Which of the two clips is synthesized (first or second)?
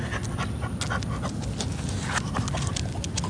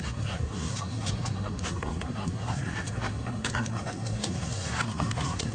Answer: second